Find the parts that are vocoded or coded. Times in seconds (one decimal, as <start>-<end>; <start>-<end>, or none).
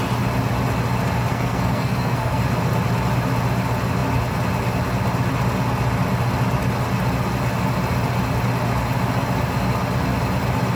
1.3-2.4